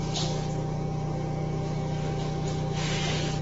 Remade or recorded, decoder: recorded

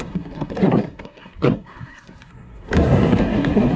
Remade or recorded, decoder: remade, codec, SNAC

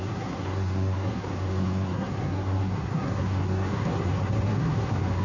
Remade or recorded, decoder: remade, codec, SNAC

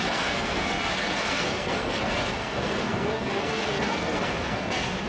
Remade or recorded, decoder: remade, codec, SNAC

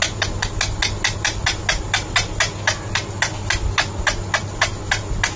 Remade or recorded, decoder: recorded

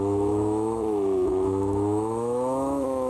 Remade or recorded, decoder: remade, autoencoder, DAC-VAE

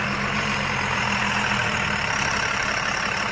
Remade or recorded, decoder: remade, vocoder, BigVGAN v2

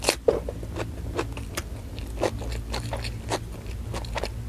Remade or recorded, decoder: recorded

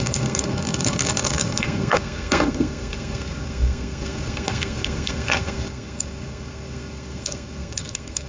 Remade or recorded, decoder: remade, codec, SNAC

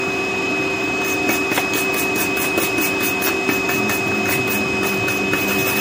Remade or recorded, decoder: remade, vocoder, BigVGAN v2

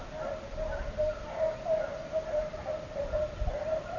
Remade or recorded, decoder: recorded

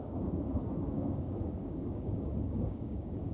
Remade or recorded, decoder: remade, codec, DAC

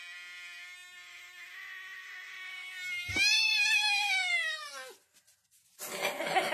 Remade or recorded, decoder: recorded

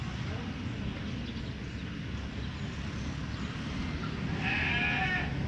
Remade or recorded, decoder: recorded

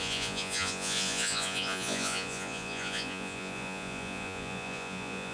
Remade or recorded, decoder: remade, vocoder, Vocos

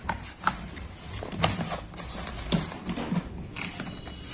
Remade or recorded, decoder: recorded